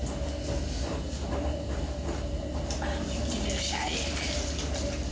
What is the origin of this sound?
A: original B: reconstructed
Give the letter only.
A